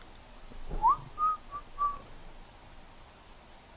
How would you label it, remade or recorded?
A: recorded